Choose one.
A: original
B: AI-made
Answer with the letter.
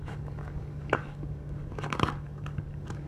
B